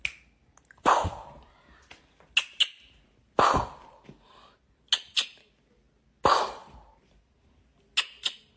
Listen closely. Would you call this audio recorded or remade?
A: recorded